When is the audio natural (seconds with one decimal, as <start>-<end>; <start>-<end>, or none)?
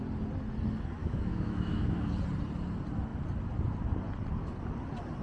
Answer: 0.0-1.0; 2.1-5.2